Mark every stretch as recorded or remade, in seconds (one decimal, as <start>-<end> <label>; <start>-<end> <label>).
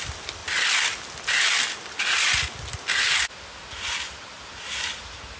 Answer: 0.0-5.4 recorded